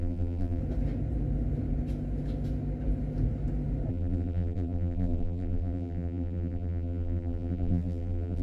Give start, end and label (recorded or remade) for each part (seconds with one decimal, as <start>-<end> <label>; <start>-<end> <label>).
0.0-0.6 remade; 0.6-3.9 recorded; 3.9-8.4 remade